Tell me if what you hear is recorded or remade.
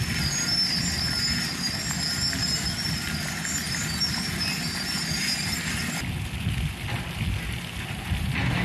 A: recorded